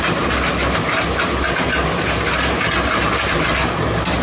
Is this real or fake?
real